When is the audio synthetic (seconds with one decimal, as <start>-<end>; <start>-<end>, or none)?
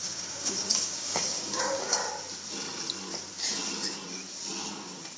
0.0-2.0